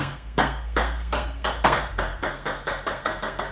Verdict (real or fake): fake